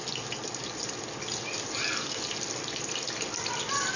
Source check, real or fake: real